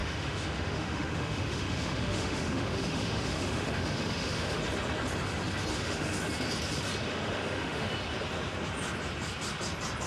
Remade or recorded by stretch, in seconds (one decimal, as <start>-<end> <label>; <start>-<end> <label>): 0.0-4.6 remade; 4.6-5.7 recorded; 5.7-6.2 remade; 6.2-7.1 recorded; 7.1-7.9 remade; 7.9-10.1 recorded